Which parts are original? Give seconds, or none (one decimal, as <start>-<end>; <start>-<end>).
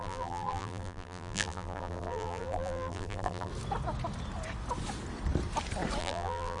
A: 3.5-6.0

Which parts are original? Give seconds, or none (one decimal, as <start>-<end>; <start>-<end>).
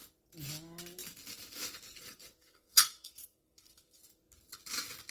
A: 0.0-2.4; 4.0-5.1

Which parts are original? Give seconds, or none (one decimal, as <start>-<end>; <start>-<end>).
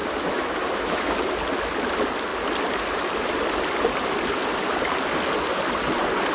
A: 1.3-6.3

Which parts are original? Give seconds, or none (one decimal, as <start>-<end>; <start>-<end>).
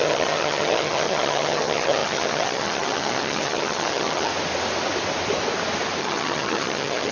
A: 4.3-6.0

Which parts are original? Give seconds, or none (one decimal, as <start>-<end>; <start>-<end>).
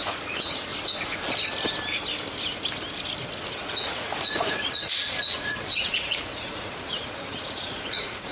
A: 0.7-3.5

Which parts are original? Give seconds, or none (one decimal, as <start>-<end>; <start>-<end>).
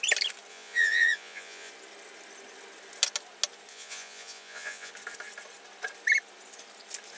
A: 0.0-0.5; 1.7-3.7; 4.9-7.2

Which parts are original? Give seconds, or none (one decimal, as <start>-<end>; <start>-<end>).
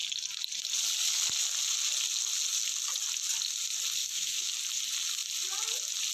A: 0.0-4.0; 4.5-6.1